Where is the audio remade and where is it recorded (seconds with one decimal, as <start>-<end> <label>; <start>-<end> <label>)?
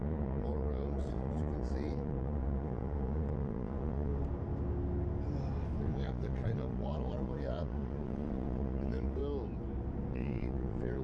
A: 0.0-4.1 remade; 4.1-5.8 recorded; 5.8-9.2 remade; 9.2-10.1 recorded; 10.1-11.0 remade